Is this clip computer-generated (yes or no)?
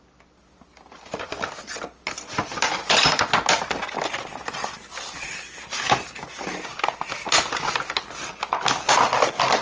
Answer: no